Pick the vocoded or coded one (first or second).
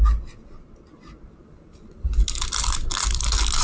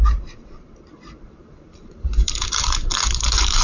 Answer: second